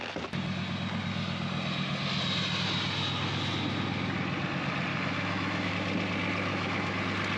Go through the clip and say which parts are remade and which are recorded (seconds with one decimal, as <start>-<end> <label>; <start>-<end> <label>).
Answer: 0.0-4.9 recorded; 4.9-5.7 remade; 5.7-6.5 recorded; 6.5-7.0 remade; 7.0-7.4 recorded